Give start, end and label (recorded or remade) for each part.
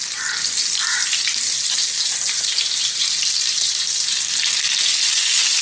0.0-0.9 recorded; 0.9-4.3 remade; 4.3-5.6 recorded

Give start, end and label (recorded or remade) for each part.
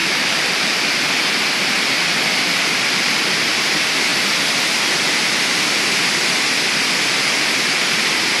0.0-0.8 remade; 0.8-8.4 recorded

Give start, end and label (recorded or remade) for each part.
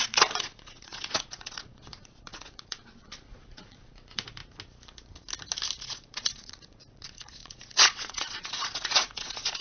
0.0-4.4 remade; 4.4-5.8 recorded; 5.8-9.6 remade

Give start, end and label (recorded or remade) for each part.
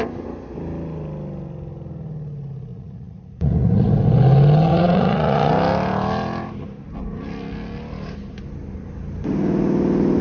0.0-2.7 recorded; 2.7-3.9 remade; 3.9-4.7 recorded; 4.7-5.5 remade; 5.5-10.2 recorded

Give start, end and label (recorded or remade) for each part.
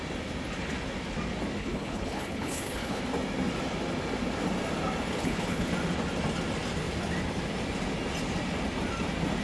0.0-1.6 recorded; 1.6-3.0 remade; 3.0-5.2 recorded; 5.2-5.7 remade; 5.7-9.4 recorded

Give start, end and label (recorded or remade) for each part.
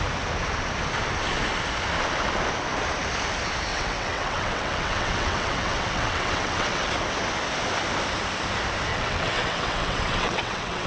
0.0-3.7 recorded; 3.7-6.9 remade; 6.9-8.9 recorded; 8.9-10.9 remade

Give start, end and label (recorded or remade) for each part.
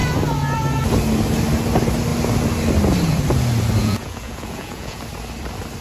0.0-3.8 recorded; 3.8-5.0 remade; 5.0-5.8 recorded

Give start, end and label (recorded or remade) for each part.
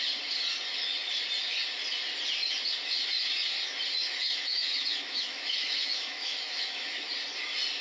0.0-4.0 recorded; 4.0-7.0 remade; 7.0-7.8 recorded